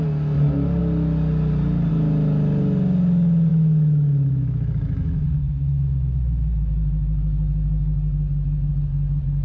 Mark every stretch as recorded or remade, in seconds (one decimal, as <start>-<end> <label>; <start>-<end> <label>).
0.0-3.5 recorded; 3.5-8.7 remade; 8.7-9.4 recorded